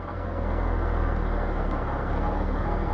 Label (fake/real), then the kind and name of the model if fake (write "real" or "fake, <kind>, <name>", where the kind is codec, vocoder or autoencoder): fake, codec, SNAC